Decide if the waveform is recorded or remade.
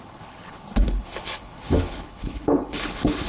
remade